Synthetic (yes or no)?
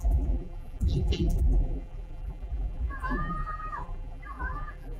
yes